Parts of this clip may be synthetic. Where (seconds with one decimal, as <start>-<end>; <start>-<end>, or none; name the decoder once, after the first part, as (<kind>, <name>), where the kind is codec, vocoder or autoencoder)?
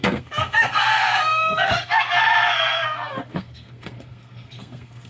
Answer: 0.0-5.1 (codec, SNAC)